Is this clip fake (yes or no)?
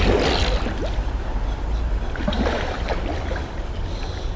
no